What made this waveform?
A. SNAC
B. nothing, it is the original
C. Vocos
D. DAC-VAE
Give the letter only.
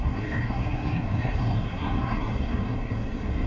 A